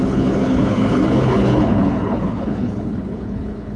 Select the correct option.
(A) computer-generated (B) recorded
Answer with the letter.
A